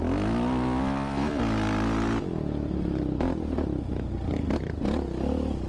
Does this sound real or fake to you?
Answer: real